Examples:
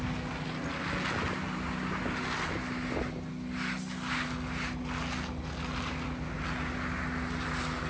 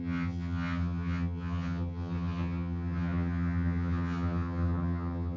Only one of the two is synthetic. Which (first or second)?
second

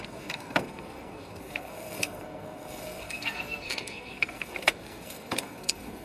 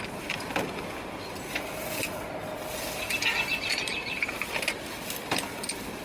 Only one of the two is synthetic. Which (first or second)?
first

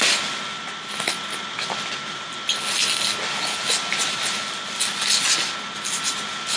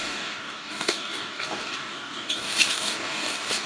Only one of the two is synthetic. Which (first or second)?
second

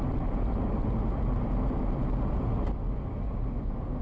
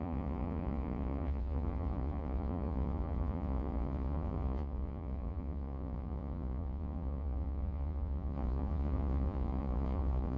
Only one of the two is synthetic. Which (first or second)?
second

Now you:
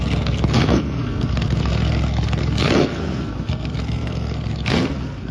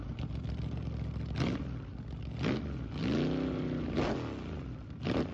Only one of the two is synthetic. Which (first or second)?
first